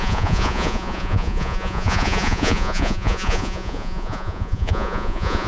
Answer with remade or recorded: remade